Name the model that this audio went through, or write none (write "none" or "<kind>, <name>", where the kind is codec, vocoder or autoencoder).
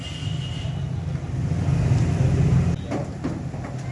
none